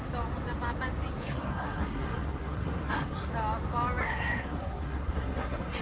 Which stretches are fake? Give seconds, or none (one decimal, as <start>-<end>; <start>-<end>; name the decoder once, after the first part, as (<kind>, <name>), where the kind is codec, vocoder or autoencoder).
1.2-3.3 (codec, SNAC); 4.0-5.8